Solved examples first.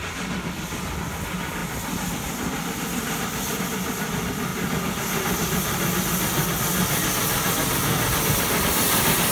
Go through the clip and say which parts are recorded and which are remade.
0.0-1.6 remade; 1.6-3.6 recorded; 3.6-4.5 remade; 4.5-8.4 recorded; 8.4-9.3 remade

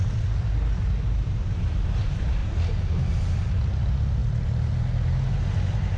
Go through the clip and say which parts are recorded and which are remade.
0.0-6.0 recorded

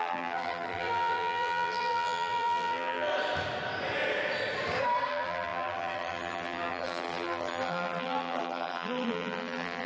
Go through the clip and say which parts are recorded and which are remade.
0.0-3.1 remade; 3.1-5.1 recorded; 5.1-9.9 remade

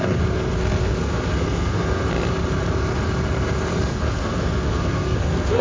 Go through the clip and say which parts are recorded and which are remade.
0.0-2.0 remade; 2.0-3.9 recorded; 3.9-5.6 remade

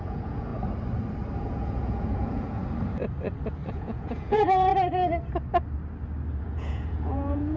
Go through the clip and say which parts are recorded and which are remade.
0.0-0.5 remade; 0.5-1.4 recorded; 1.4-2.6 remade; 2.6-3.7 recorded; 3.7-4.7 remade; 4.7-6.4 recorded; 6.4-7.6 remade

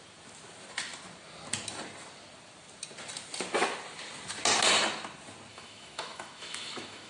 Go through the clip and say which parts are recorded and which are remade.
0.0-5.5 recorded; 5.5-7.1 remade

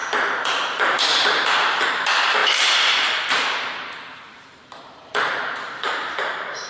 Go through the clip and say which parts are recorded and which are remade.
0.0-6.7 remade